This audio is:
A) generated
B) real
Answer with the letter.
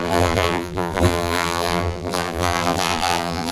A